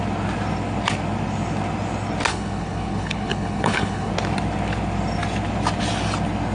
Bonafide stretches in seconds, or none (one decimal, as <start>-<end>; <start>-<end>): 0.0-2.3; 4.1-6.5